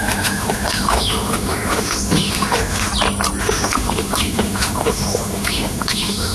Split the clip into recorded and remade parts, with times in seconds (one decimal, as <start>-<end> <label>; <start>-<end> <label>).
0.0-2.9 remade; 2.9-3.4 recorded; 3.4-6.3 remade